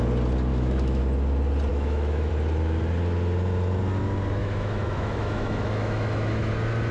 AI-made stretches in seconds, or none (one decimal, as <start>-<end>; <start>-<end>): 0.5-1.0; 1.7-2.3; 4.4-6.5